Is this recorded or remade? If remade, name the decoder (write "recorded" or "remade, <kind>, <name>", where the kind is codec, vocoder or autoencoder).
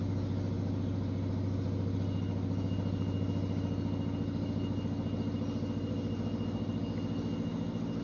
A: recorded